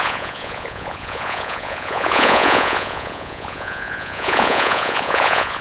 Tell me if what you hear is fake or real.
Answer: fake